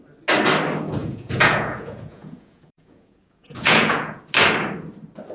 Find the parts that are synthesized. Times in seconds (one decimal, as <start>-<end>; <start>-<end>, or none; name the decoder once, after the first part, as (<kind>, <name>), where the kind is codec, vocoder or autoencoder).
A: 1.0-4.2 (vocoder, Vocos)